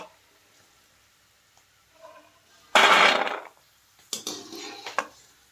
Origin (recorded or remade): recorded